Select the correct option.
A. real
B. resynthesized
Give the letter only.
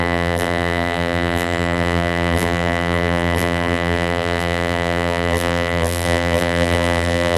B